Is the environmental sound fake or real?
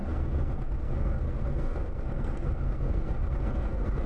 fake